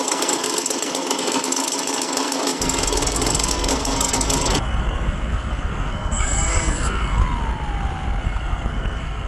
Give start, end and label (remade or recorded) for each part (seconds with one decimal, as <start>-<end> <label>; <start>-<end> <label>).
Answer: 0.0-7.2 remade; 7.2-8.2 recorded; 8.2-9.3 remade